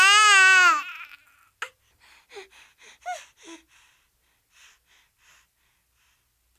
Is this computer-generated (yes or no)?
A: no